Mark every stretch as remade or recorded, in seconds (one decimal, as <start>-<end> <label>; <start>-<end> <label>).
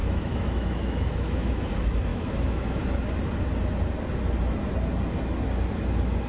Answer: 0.0-1.7 remade; 1.7-2.1 recorded; 2.1-2.8 remade; 2.8-6.3 recorded